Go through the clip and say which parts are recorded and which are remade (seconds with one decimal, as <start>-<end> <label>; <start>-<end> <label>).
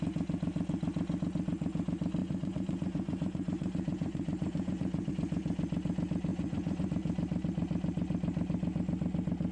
0.0-2.2 recorded; 2.2-5.1 remade; 5.1-6.3 recorded; 6.3-6.9 remade; 6.9-9.5 recorded